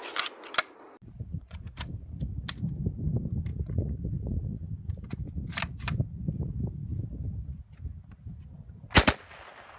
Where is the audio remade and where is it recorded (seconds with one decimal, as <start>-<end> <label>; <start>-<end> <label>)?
0.0-1.3 recorded; 1.3-1.9 remade; 1.9-3.5 recorded; 3.5-5.2 remade; 5.2-9.8 recorded